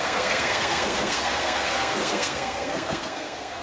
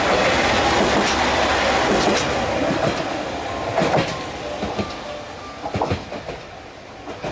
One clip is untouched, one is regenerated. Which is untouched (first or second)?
second